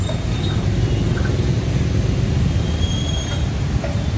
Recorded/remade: recorded